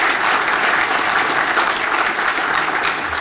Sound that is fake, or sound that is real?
real